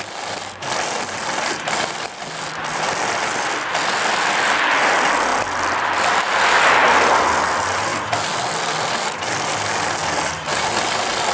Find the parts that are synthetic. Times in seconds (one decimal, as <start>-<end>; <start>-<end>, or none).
none